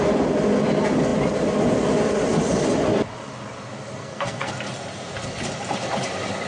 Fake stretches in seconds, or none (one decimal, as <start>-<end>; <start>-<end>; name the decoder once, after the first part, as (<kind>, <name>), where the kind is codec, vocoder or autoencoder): 4.0-4.5 (codec, SNAC)